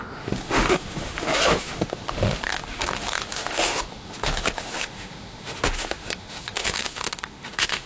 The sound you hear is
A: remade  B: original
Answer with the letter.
A